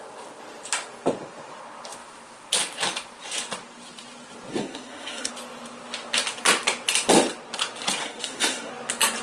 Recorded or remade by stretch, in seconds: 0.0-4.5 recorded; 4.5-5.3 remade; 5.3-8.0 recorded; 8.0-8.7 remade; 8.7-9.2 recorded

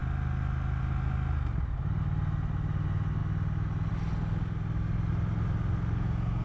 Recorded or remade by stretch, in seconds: 0.0-6.4 recorded

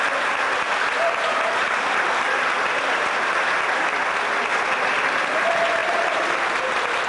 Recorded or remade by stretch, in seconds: 0.0-5.8 recorded; 5.8-6.6 remade; 6.6-7.1 recorded

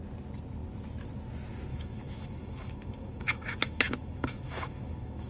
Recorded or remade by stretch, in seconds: 0.0-1.7 recorded; 1.7-5.3 remade